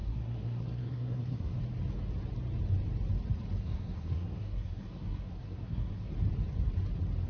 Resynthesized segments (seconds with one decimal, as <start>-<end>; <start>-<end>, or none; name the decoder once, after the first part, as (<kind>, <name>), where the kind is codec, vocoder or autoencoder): 0.0-1.6 (codec, SNAC); 3.6-6.1